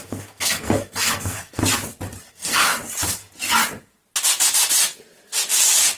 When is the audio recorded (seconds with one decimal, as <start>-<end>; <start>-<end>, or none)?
1.6-2.3; 2.7-6.0